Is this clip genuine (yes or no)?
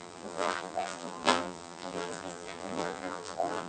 no